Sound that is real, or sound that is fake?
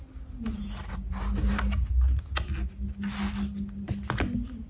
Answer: real